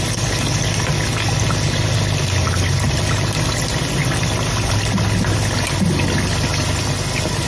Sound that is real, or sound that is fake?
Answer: real